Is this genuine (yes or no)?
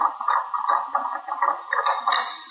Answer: yes